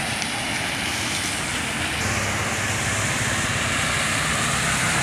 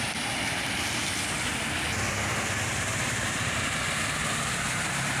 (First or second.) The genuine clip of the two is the first